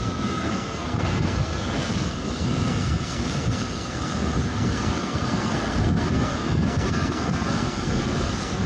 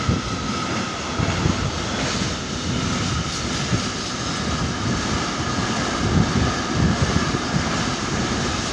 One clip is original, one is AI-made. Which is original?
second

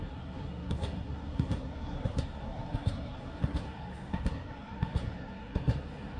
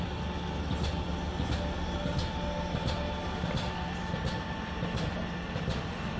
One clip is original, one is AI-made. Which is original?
second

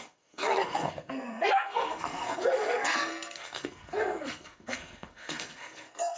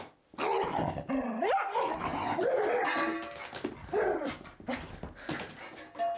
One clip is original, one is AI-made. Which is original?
second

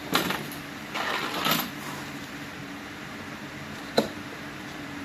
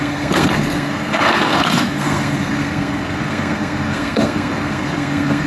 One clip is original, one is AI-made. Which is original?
first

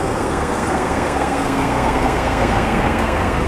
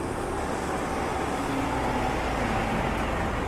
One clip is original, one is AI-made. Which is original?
second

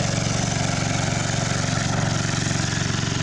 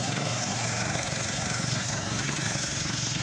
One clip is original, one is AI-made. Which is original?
first